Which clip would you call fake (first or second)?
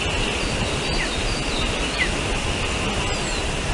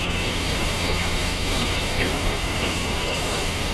second